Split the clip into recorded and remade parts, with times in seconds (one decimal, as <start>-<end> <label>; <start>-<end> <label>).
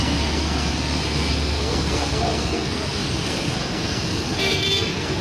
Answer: 0.0-5.2 remade